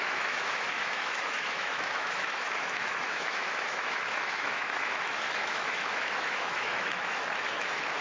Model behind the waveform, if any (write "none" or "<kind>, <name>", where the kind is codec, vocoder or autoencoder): autoencoder, DAC-VAE